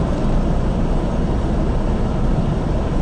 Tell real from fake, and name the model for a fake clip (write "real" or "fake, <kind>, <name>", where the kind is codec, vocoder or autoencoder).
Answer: fake, vocoder, BigVGAN v2